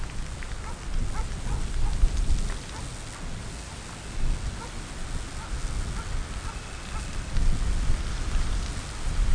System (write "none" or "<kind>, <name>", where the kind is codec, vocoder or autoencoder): none